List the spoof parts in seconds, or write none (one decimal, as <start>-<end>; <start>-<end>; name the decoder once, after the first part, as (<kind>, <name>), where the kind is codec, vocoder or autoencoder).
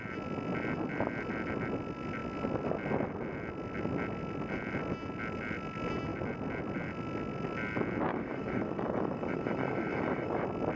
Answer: 8.1-10.4 (autoencoder, DAC-VAE)